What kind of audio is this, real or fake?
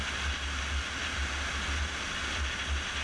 real